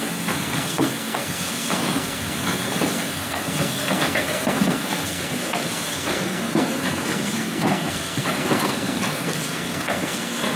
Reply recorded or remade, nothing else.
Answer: remade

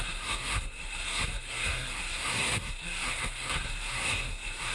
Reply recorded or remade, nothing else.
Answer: remade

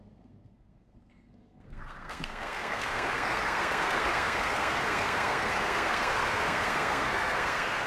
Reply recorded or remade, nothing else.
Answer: remade